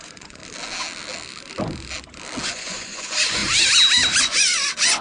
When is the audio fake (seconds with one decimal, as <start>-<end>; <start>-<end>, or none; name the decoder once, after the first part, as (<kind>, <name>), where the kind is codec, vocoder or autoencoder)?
0.0-0.4 (vocoder, Vocos); 2.5-3.4; 4.2-5.0